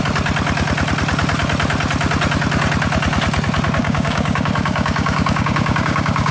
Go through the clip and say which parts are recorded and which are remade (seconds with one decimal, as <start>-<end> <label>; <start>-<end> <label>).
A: 0.0-3.8 recorded; 3.8-6.3 remade